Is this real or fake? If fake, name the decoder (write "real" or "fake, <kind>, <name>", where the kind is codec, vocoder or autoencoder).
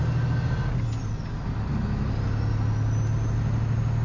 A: real